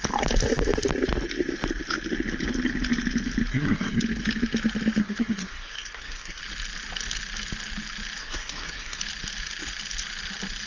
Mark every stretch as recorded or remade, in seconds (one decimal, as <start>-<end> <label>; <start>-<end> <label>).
0.0-3.5 recorded; 3.5-4.0 remade; 4.0-5.0 recorded; 5.0-6.4 remade; 6.4-8.2 recorded; 8.2-9.0 remade; 9.0-10.7 recorded

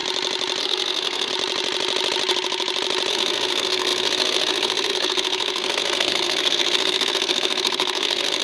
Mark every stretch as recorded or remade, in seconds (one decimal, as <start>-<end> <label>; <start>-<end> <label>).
0.0-0.6 recorded; 0.6-1.3 remade; 1.3-3.1 recorded; 3.1-8.4 remade

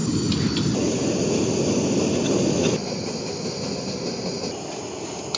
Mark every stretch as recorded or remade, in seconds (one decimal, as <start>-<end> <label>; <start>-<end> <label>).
0.0-5.4 recorded

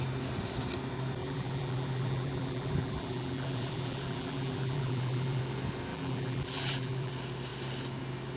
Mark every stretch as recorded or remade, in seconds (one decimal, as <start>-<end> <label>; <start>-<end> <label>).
0.0-1.2 recorded; 1.2-5.4 remade; 5.4-5.9 recorded; 5.9-7.1 remade; 7.1-8.4 recorded

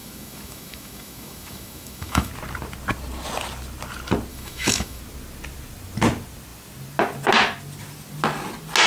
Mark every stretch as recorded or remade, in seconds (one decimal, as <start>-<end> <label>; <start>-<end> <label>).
0.0-2.3 remade; 2.3-4.3 recorded; 4.3-5.0 remade; 5.0-8.9 recorded

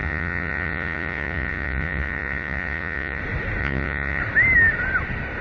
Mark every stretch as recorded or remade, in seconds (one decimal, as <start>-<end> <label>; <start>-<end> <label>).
0.0-3.2 remade; 3.2-3.6 recorded; 3.6-4.2 remade; 4.2-5.4 recorded

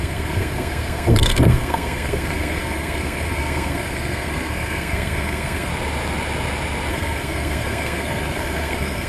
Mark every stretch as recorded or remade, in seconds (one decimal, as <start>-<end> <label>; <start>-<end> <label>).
0.0-5.7 remade; 5.7-6.9 recorded; 6.9-9.1 remade

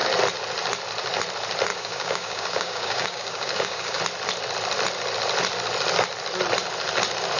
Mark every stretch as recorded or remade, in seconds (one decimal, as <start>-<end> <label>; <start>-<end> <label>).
0.0-1.7 recorded; 1.7-4.0 remade; 4.0-7.4 recorded